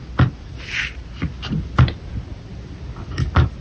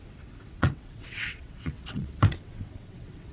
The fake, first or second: second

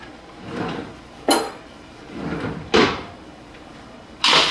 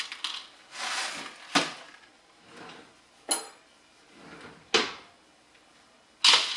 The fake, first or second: first